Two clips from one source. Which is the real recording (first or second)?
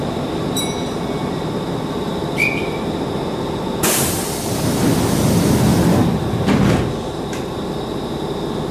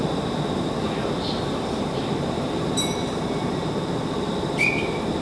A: first